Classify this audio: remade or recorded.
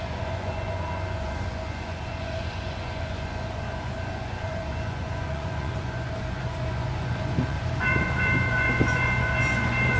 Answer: remade